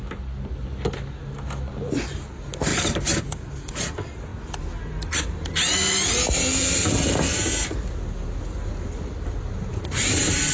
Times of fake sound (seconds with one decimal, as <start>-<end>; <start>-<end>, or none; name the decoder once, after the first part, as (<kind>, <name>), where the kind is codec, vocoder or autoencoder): 2.7-3.7 (vocoder, BigVGAN v2); 9.7-10.5